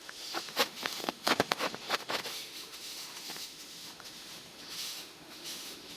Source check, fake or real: fake